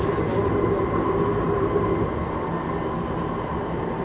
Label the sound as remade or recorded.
recorded